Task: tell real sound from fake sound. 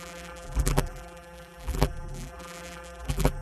fake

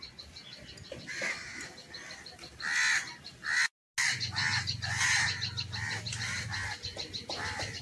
real